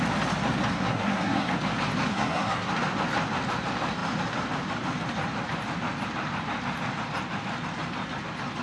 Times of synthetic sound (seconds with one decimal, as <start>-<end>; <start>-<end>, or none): 0.7-1.5; 2.1-2.7